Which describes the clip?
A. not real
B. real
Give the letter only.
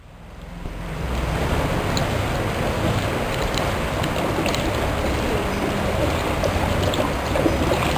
B